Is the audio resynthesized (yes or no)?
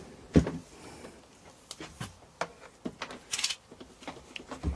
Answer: no